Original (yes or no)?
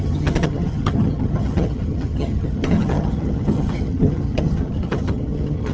no